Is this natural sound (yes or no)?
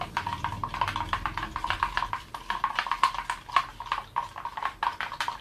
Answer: yes